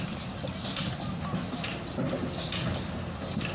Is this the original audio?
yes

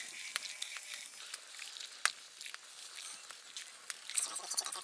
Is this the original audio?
yes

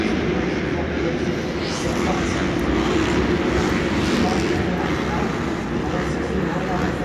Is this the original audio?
yes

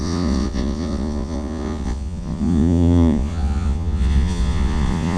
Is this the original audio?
no